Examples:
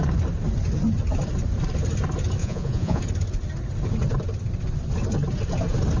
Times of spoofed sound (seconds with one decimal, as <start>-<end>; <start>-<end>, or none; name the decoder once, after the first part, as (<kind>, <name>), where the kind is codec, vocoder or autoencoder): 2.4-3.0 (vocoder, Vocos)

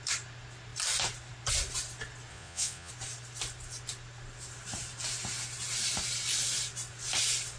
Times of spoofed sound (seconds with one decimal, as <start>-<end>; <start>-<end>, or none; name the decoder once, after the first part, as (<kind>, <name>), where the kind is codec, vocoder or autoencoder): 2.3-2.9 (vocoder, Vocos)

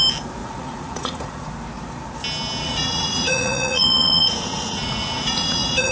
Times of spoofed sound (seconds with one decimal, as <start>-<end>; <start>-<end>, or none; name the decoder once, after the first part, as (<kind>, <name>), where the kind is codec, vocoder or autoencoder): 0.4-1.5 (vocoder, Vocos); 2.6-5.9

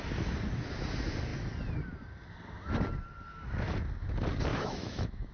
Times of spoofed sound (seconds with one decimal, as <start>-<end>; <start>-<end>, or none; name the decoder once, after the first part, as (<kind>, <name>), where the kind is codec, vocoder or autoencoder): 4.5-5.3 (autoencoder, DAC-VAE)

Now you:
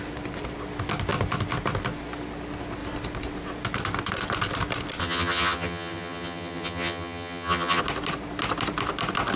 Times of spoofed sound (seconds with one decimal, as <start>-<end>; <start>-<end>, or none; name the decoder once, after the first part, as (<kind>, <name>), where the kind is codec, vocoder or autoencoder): 5.0-7.8 (vocoder, HiFi-GAN)

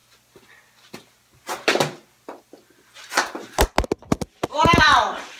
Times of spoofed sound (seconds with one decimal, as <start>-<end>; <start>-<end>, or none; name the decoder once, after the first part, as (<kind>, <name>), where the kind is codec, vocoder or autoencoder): none

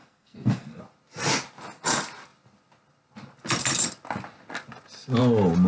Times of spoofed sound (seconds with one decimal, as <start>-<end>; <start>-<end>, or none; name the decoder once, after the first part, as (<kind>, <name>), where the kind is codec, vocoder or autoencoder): 0.0-0.8 (codec, SNAC)

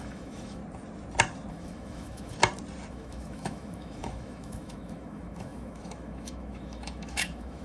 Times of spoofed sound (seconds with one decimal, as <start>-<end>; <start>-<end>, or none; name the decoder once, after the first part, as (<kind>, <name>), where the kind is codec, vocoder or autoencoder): 0.0-0.6 (autoencoder, DAC-VAE); 1.5-2.4; 2.9-7.6